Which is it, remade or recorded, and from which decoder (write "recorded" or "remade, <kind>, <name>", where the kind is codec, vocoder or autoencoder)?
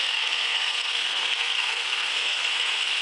remade, codec, SNAC